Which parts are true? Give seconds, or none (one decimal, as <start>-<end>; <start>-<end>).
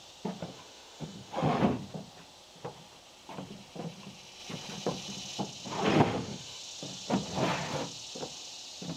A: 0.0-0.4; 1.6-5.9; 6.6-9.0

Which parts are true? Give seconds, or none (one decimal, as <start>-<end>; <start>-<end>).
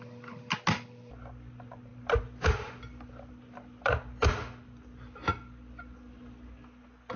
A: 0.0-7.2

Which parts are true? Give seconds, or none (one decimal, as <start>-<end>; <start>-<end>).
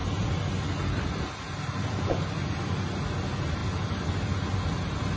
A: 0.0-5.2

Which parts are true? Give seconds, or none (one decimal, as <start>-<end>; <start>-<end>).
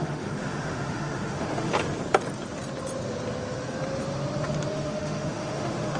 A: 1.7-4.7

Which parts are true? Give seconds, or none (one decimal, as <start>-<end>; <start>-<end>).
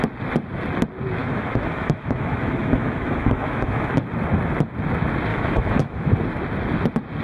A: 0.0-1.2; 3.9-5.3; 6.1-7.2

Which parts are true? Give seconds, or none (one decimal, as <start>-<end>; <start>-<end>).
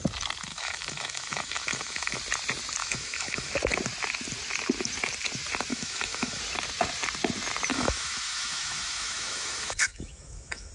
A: 0.0-0.5; 2.2-2.8; 3.5-5.7; 6.4-7.7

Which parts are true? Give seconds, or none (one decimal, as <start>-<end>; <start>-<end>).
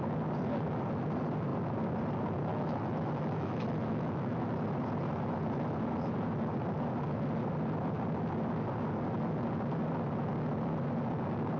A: 0.0-2.5; 4.5-11.6